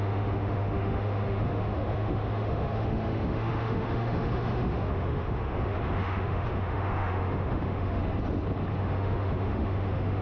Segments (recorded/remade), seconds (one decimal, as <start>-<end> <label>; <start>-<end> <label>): 0.0-8.0 remade; 8.0-8.8 recorded; 8.8-10.2 remade

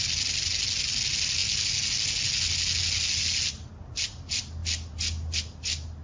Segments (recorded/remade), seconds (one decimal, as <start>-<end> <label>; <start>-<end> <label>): 0.0-6.0 recorded

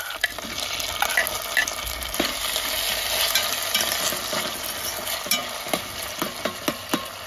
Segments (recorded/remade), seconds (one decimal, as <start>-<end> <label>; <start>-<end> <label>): 0.0-7.3 recorded